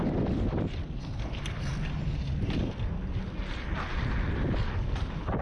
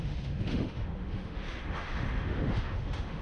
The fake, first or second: second